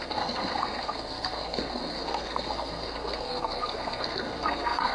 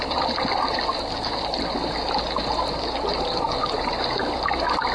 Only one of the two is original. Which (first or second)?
second